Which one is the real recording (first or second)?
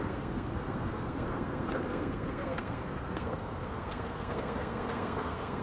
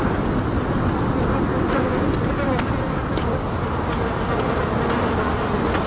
second